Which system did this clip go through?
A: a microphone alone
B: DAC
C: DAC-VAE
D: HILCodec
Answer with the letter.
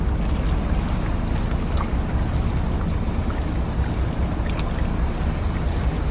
A